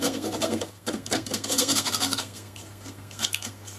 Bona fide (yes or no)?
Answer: no